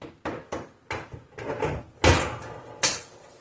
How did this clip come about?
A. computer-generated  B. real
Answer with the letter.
B